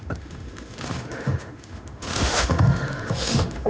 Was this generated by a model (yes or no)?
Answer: yes